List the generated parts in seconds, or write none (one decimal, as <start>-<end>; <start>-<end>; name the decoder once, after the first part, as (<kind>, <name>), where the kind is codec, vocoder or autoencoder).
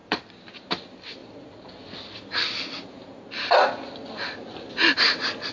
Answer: none